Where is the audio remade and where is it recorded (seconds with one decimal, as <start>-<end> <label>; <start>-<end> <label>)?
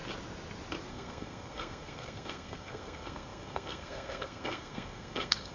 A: 0.0-0.9 recorded; 0.9-5.5 remade